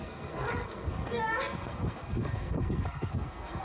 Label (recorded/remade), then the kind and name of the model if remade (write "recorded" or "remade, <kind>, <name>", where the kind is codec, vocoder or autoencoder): remade, codec, SNAC